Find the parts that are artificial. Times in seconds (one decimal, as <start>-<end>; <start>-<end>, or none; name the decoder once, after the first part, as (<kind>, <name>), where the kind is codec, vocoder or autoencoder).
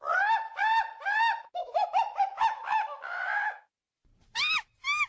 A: 1.6-3.7 (autoencoder, DAC-VAE)